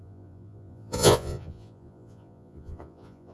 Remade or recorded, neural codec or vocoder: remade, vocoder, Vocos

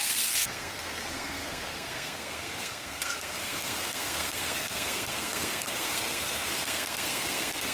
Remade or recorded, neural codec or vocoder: remade, codec, SNAC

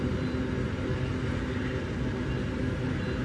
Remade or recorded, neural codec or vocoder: recorded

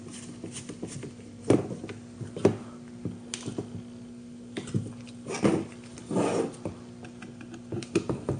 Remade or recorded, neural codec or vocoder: recorded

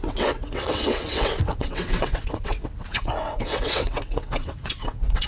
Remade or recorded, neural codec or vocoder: remade, vocoder, WaveNeXt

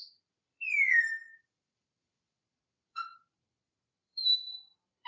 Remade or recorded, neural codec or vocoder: remade, vocoder, BigVGAN v2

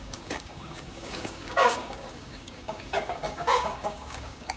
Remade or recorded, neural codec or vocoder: remade, codec, DAC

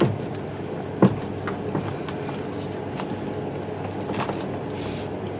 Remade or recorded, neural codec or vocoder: recorded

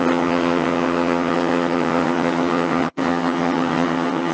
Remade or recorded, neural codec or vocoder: remade, vocoder, HiFi-GAN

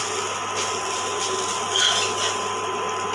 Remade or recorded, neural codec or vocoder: recorded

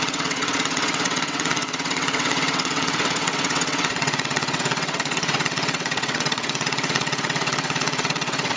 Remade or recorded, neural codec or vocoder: remade, vocoder, WaveNeXt